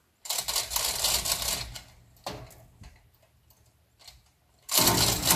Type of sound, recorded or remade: recorded